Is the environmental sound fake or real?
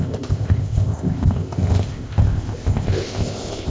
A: fake